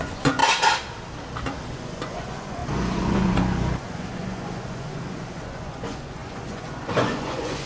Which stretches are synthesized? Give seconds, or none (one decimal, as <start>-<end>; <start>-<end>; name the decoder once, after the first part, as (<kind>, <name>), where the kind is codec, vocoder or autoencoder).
0.0-0.4 (vocoder, Vocos); 1.7-7.7